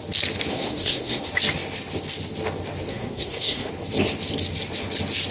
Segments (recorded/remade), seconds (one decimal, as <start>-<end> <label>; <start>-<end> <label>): 0.0-0.5 recorded; 0.5-1.2 remade; 1.2-2.9 recorded; 2.9-3.7 remade; 3.7-5.3 recorded